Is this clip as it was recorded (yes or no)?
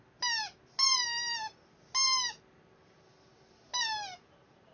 yes